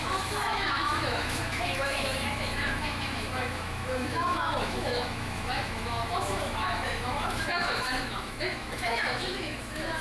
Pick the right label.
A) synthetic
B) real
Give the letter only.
A